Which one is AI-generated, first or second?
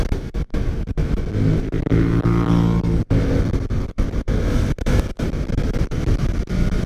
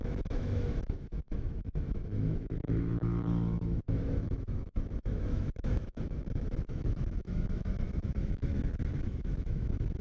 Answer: second